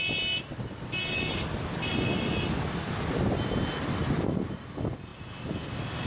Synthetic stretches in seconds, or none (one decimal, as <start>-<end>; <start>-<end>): none